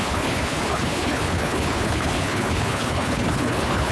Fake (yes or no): yes